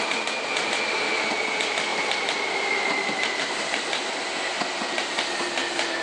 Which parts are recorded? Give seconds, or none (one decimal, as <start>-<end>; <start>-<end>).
0.0-6.0